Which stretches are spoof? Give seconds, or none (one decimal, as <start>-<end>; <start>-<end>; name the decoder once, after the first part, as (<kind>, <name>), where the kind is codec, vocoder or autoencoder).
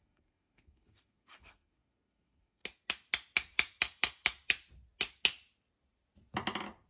0.0-2.6 (codec, SNAC)